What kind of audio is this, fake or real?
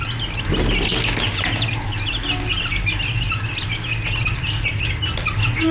real